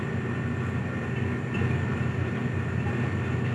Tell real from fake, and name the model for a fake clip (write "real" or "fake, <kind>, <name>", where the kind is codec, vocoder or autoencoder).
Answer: real